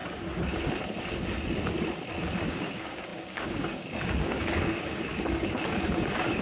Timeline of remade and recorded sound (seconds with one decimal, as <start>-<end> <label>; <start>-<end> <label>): 0.0-2.5 recorded; 2.5-6.4 remade